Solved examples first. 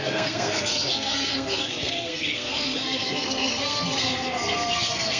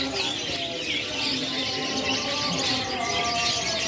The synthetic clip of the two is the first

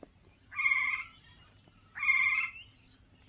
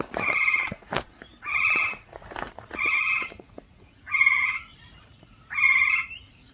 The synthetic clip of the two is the second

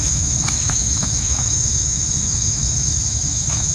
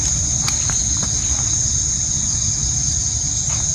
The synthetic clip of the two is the first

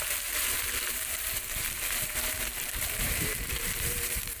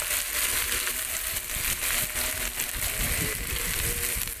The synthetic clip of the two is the first